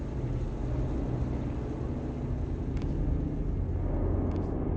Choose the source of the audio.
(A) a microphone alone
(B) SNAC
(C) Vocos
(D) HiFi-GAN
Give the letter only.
A